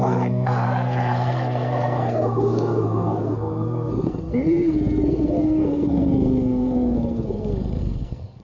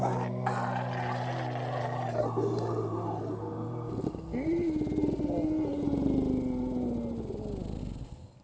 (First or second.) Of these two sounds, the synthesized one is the first